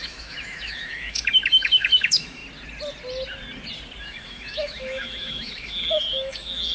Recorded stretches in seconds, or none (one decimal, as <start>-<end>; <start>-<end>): 2.4-4.0